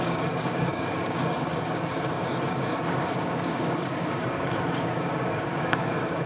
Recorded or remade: remade